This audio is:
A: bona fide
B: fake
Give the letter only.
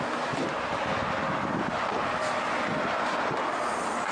A